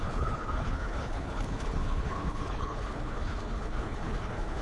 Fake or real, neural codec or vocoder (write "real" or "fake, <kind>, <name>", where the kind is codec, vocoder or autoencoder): fake, codec, HILCodec